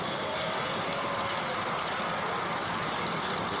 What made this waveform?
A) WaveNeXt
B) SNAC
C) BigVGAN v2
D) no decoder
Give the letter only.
D